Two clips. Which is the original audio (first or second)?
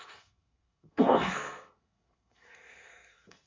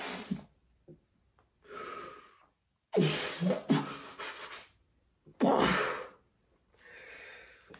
second